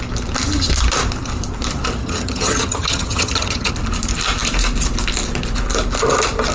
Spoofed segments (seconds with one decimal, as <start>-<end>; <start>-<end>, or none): 2.0-3.7